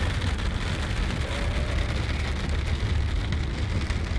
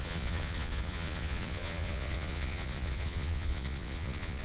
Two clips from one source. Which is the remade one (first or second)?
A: second